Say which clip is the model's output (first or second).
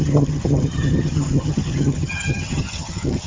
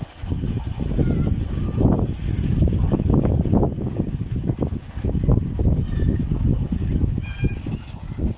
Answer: first